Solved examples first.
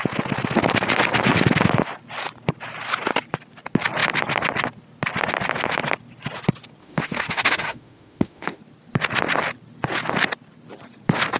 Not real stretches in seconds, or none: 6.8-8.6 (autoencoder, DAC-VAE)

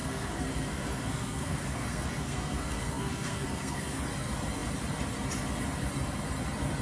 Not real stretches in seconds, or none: 0.0-4.0 (codec, SNAC)

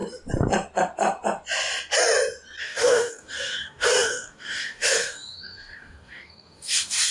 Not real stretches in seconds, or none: 2.6-7.1 (codec, DAC)

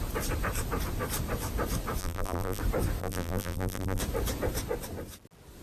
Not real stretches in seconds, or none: 2.0-2.6 (vocoder, BigVGAN v2); 3.0-4.0

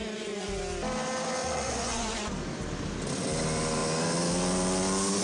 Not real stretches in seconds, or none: 0.0-0.6 (vocoder, Vocos); 1.4-2.3

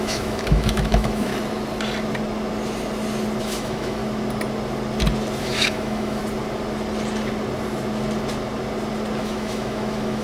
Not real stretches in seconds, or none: 0.0-1.3 (autoencoder, DAC-VAE); 3.4-4.0; 5.4-6.2; 9.2-10.2